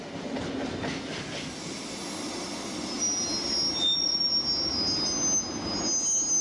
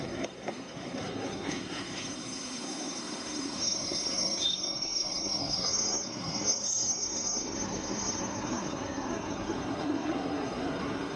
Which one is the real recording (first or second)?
first